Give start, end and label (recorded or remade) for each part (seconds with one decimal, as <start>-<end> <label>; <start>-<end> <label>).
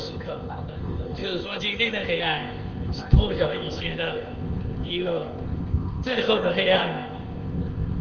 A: 0.0-8.0 remade